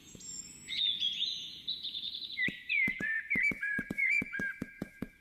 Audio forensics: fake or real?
fake